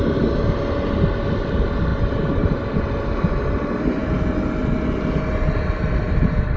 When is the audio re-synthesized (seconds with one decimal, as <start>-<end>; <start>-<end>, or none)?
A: 1.9-2.8